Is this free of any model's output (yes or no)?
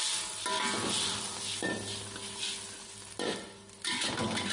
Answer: yes